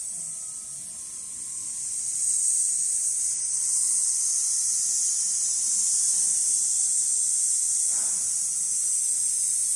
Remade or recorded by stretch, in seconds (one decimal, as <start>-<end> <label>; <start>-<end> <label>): 0.0-9.8 recorded